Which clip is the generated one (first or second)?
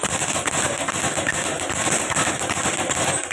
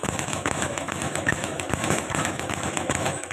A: second